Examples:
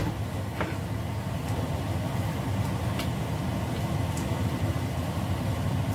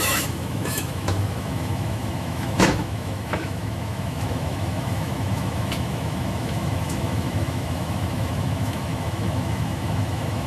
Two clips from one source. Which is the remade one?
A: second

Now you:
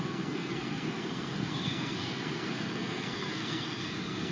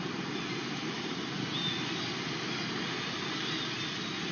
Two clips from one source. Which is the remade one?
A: first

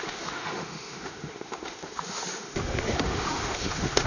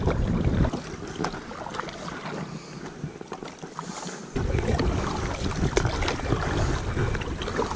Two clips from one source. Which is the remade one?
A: first